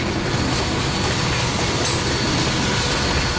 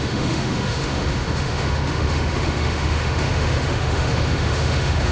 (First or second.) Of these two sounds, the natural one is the first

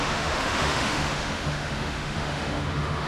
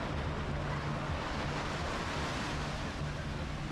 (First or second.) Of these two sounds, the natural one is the second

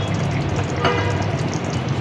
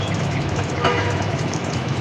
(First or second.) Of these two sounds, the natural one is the first